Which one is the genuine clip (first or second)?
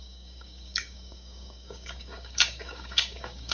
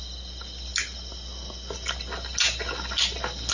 second